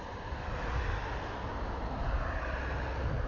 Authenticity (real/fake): real